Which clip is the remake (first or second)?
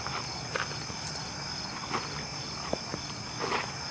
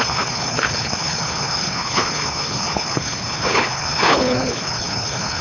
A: second